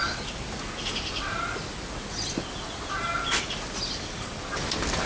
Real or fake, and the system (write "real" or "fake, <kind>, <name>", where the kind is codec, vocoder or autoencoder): real